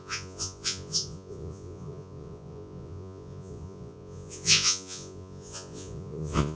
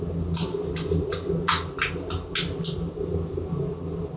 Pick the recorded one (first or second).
second